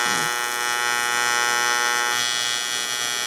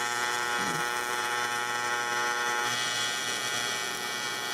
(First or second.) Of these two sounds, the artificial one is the second